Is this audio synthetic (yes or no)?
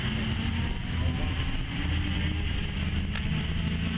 no